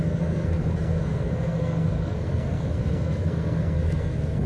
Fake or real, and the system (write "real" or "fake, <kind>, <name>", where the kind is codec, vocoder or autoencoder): fake, codec, SNAC